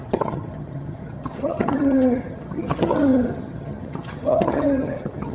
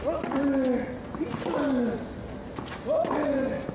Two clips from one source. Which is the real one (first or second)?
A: second